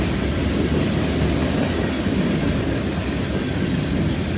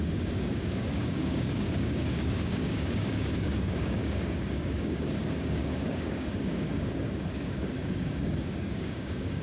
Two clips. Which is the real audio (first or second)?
first